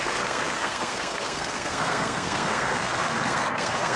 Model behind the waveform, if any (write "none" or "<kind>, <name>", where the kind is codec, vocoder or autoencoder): codec, SNAC